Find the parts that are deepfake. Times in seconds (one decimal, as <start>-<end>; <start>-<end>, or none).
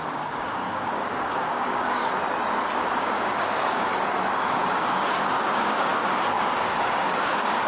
0.0-2.0; 3.0-3.9; 4.5-7.7